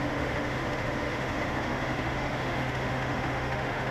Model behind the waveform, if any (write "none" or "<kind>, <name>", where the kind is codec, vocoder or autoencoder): autoencoder, DAC-VAE